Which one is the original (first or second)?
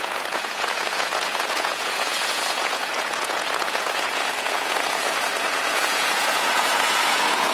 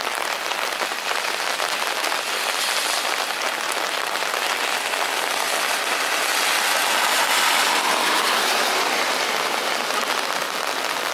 second